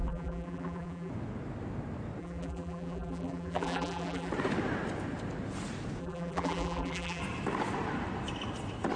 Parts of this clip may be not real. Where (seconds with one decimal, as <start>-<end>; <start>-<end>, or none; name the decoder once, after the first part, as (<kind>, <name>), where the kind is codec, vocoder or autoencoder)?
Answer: 0.0-1.1 (vocoder, BigVGAN v2); 2.2-4.3; 6.0-7.2